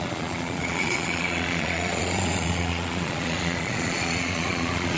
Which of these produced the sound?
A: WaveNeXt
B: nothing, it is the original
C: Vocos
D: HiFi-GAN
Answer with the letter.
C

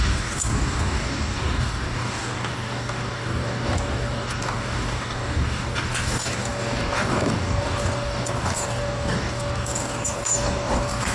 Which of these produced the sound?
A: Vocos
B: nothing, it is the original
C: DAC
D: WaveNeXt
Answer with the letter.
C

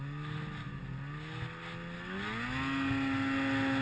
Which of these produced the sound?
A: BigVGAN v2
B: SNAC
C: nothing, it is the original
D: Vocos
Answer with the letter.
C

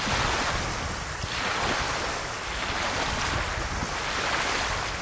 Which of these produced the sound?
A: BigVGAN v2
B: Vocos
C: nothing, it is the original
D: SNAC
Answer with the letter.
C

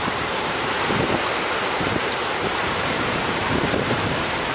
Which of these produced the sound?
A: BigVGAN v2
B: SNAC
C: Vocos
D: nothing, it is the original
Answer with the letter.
A